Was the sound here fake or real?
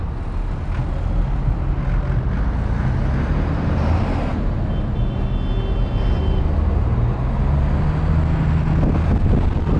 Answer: real